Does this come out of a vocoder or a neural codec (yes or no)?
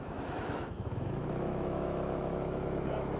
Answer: yes